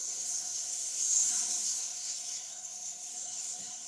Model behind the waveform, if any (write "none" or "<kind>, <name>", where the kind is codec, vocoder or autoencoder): codec, SNAC